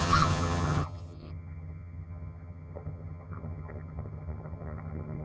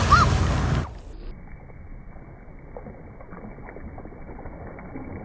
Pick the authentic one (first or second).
second